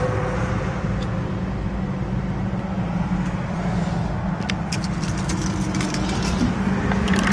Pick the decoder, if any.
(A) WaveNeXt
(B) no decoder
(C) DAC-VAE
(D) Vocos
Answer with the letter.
B